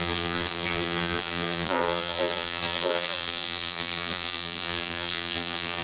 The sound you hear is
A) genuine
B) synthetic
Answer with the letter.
B